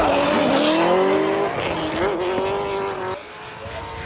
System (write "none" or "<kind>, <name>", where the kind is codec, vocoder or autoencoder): none